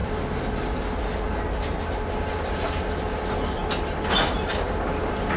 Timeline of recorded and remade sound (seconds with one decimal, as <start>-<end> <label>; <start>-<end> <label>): 0.0-5.4 recorded